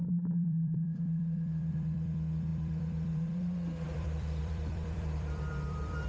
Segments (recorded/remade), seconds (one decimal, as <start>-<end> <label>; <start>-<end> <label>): 0.0-6.1 remade